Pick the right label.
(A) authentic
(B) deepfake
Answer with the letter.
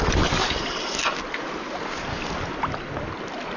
A